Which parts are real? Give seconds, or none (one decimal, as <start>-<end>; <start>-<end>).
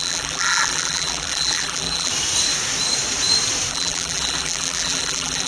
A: 2.1-3.7